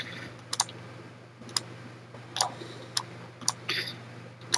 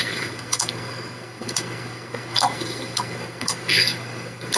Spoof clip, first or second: second